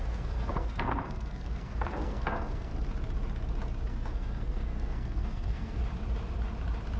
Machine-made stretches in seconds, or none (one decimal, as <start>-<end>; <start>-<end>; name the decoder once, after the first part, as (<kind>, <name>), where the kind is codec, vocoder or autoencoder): 0.0-2.7 (codec, SNAC); 3.9-5.8